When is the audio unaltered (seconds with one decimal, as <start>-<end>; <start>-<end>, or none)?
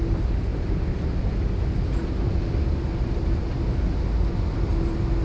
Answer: 0.0-5.2